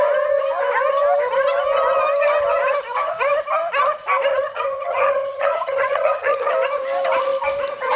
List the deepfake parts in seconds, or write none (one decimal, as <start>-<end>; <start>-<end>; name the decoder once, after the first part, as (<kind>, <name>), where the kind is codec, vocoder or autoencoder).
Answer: 4.3-6.5 (vocoder, HiFi-GAN)